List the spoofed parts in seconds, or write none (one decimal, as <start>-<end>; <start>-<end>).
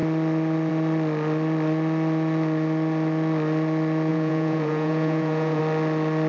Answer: 4.1-5.6